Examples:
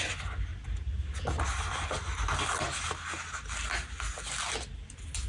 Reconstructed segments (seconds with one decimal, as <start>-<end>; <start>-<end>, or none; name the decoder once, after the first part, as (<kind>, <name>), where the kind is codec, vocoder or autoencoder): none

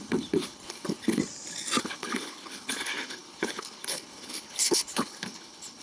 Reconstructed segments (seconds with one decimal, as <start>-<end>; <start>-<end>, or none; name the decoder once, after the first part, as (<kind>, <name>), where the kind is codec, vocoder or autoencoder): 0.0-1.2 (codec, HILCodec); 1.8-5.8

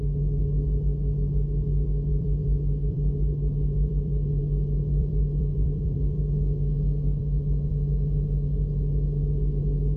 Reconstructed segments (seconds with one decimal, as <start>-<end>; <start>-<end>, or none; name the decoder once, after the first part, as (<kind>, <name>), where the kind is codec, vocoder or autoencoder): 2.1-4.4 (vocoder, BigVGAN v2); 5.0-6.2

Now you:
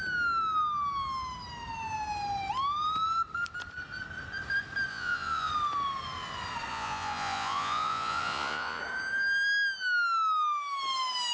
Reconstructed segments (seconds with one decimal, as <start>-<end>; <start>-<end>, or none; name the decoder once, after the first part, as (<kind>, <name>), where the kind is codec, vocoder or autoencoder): 4.9-5.5 (vocoder, Vocos); 6.7-8.8

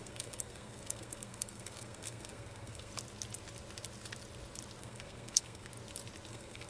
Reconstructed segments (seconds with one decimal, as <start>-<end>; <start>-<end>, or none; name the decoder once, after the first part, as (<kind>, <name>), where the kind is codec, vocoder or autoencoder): 0.0-2.9 (codec, SNAC); 4.8-5.7; 6.3-6.7

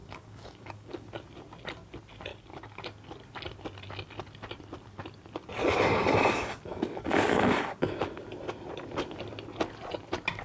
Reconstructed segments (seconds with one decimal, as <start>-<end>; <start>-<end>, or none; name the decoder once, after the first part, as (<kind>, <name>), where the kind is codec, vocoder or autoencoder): 0.0-1.1 (codec, DAC); 2.3-2.8; 6.7-7.8

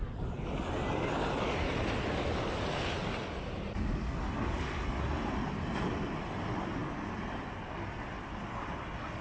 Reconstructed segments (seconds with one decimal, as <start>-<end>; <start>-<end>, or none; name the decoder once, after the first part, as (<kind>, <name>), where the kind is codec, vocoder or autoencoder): none

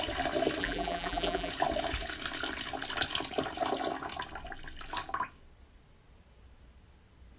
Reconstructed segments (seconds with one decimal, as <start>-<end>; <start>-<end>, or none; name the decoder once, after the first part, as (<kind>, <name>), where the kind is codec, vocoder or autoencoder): 0.6-1.5 (vocoder, BigVGAN v2)